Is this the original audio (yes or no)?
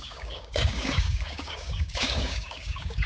no